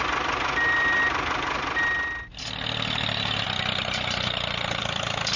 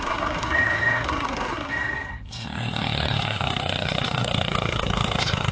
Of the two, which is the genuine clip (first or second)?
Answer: first